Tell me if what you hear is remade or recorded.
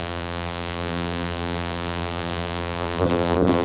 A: remade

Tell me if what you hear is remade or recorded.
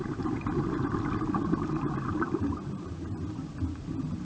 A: recorded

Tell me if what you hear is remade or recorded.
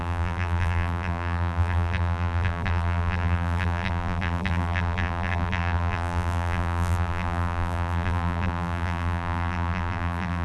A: remade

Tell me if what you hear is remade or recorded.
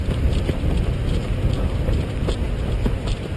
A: recorded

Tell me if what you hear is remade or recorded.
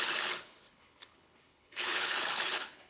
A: remade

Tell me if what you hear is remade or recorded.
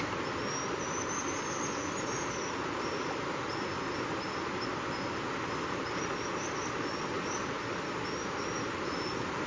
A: recorded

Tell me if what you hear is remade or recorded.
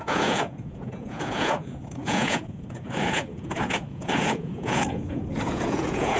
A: remade